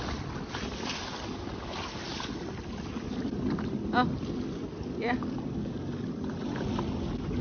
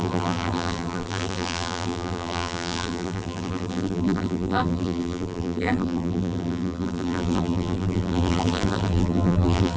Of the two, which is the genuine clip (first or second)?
first